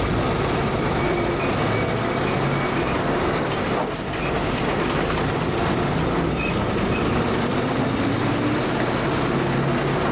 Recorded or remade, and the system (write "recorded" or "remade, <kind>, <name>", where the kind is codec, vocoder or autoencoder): recorded